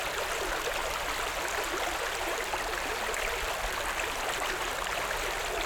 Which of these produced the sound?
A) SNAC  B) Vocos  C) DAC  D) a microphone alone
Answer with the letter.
D